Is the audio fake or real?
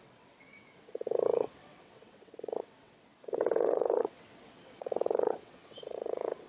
fake